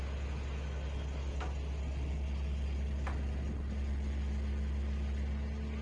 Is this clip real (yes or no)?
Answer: yes